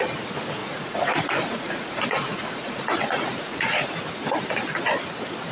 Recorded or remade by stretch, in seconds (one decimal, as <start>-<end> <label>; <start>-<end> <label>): 0.0-0.6 recorded; 0.6-3.9 remade; 3.9-5.5 recorded